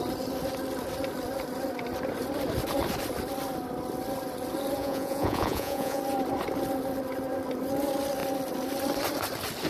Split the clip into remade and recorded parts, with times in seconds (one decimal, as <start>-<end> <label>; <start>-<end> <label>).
0.0-4.8 recorded; 4.8-6.0 remade; 6.0-9.7 recorded